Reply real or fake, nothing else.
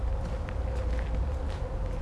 real